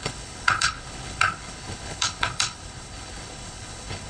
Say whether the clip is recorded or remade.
remade